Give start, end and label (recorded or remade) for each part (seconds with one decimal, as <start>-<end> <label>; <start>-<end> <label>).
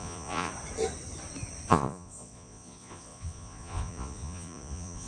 0.0-0.5 remade; 0.5-1.7 recorded; 1.7-5.1 remade